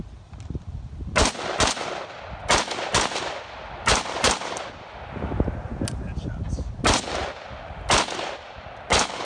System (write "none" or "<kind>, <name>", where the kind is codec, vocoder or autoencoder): none